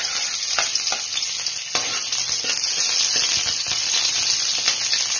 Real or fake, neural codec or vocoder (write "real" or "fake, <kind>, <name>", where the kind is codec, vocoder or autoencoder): real